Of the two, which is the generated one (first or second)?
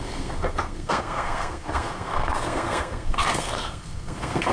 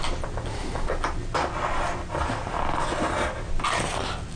first